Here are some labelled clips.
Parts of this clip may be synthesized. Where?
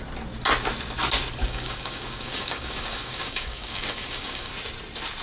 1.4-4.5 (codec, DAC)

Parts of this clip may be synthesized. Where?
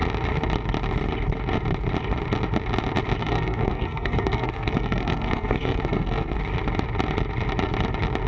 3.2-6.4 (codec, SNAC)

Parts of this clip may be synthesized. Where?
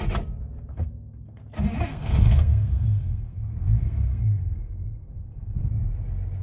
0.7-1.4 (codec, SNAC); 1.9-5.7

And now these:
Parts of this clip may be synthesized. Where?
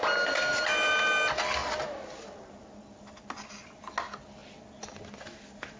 0.5-1.1 (vocoder, BigVGAN v2); 1.6-3.5